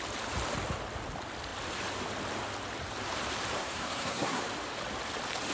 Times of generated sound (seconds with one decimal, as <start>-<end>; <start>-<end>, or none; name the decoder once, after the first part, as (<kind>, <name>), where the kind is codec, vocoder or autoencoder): 3.6-4.4 (codec, SNAC)